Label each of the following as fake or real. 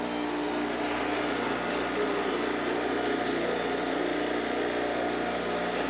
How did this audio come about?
real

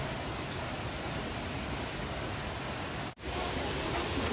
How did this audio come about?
real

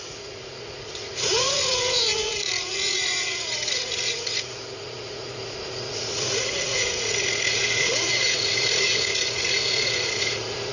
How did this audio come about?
fake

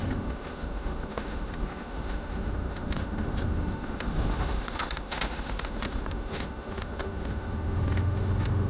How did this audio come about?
fake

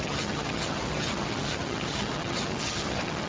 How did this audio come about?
fake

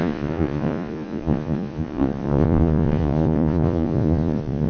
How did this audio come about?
fake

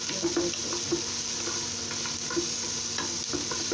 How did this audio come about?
real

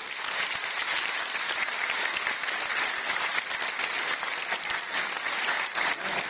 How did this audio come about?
real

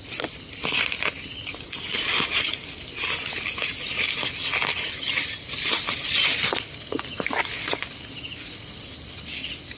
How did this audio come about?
real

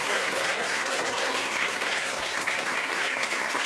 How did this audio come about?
fake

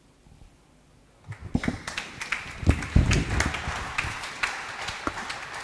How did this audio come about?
real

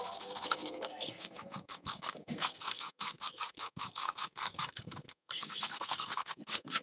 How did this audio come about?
fake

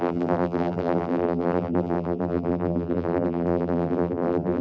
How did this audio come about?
fake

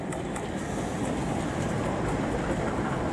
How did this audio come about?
real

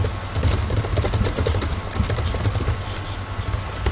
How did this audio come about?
real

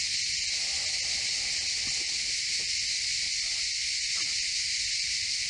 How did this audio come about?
real